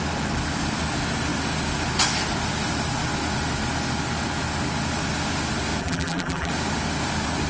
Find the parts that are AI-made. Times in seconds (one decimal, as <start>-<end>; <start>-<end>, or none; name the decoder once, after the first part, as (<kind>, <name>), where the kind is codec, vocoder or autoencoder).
5.8-6.5 (vocoder, BigVGAN v2)